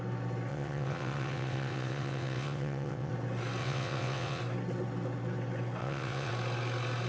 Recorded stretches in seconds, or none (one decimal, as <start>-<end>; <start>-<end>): 0.0-0.5; 3.1-3.6; 4.4-5.8; 6.3-7.1